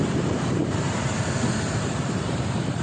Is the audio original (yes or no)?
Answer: no